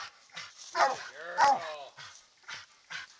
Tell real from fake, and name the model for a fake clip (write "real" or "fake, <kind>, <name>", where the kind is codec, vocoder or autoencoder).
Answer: real